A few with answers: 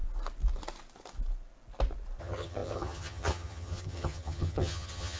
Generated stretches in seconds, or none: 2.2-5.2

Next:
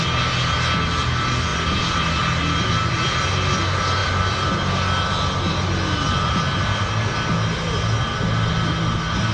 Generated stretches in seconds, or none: 1.5-2.1; 4.0-6.3